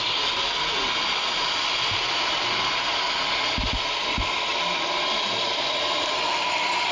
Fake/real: real